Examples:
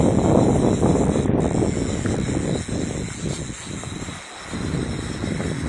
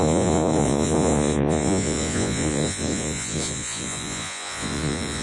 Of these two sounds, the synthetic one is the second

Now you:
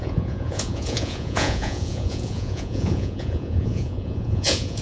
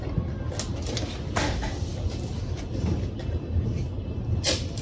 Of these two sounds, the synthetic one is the first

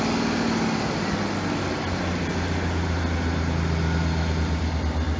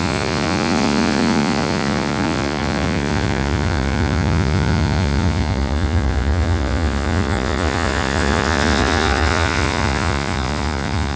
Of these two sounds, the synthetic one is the second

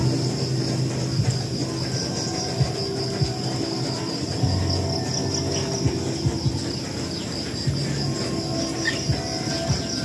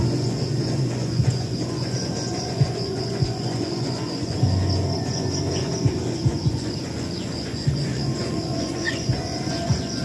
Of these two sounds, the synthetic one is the second